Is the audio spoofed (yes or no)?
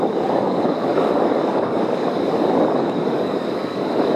yes